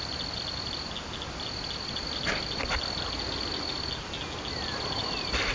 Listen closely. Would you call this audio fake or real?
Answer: real